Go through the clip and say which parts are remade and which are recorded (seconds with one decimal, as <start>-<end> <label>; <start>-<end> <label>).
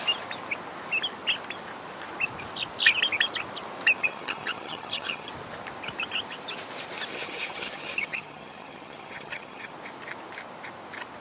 0.0-4.0 recorded; 4.0-5.3 remade; 5.3-7.1 recorded; 7.1-9.7 remade; 9.7-11.2 recorded